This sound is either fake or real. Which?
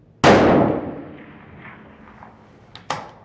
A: real